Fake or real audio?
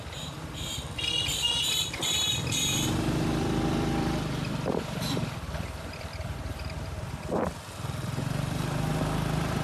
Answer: fake